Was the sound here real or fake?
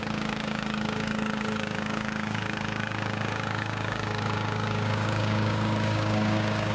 fake